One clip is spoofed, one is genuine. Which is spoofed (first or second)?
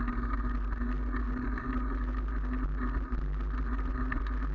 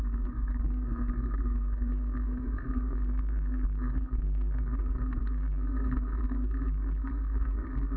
second